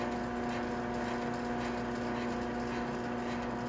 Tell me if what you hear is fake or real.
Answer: real